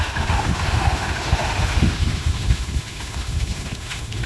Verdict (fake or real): fake